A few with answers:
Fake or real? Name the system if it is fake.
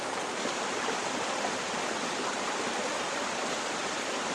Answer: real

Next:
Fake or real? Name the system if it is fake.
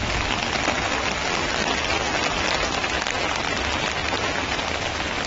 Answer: real